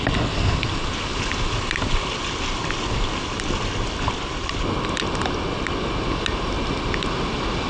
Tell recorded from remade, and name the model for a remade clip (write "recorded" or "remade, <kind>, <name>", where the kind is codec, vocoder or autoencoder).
recorded